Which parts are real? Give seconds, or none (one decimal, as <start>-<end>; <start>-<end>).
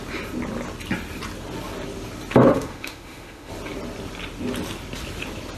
0.0-2.5; 3.5-5.6